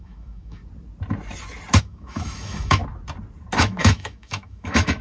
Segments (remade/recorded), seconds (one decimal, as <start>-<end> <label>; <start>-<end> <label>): 0.0-0.6 remade; 0.6-1.8 recorded; 1.8-2.8 remade; 2.8-3.6 recorded; 3.6-5.0 remade